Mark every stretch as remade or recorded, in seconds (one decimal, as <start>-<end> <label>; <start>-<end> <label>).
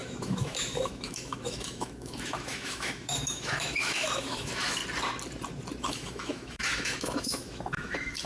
0.0-4.8 remade; 4.8-5.8 recorded; 5.8-8.3 remade